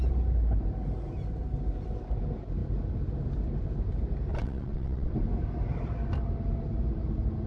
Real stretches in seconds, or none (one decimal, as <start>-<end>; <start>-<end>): 0.0-4.3; 5.1-7.5